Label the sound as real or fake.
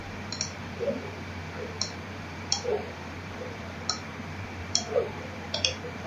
fake